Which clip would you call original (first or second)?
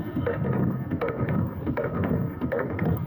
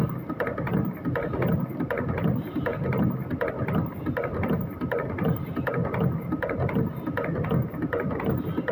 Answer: second